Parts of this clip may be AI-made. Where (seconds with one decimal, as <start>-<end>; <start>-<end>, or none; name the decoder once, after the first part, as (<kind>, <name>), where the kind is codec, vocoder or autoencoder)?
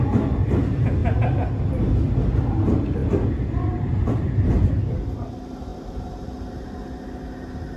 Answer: none